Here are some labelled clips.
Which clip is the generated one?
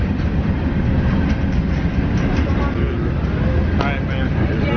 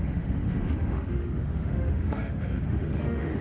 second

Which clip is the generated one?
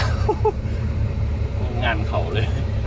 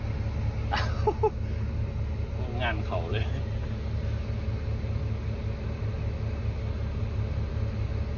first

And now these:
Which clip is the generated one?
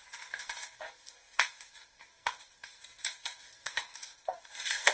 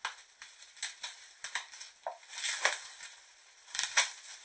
first